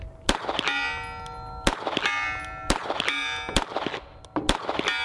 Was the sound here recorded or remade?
recorded